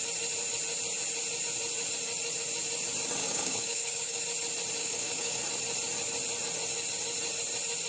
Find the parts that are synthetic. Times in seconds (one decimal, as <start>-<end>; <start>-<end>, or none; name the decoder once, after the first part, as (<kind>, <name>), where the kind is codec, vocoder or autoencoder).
3.2-4.2 (codec, DAC); 4.8-5.4